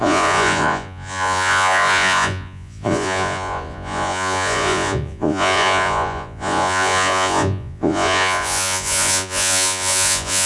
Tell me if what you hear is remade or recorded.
remade